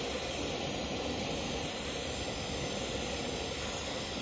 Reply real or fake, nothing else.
real